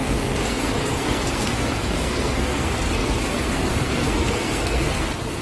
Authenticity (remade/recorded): remade